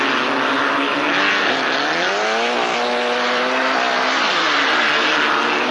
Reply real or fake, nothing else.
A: real